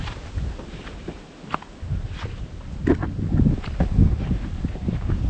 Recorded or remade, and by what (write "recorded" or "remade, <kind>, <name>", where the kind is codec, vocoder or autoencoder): recorded